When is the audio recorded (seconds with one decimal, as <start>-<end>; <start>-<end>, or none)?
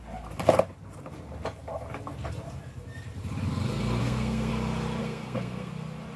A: 0.0-4.0; 4.5-5.0; 5.7-6.2